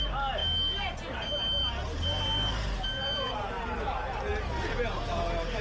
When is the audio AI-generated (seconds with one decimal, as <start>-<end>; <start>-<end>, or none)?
none